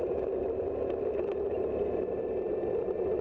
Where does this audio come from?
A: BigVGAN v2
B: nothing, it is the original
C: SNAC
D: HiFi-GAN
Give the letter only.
A